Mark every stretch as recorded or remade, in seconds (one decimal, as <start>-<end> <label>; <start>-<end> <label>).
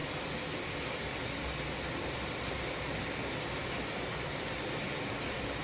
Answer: 0.0-5.6 recorded